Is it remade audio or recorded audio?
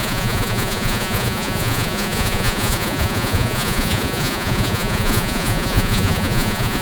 remade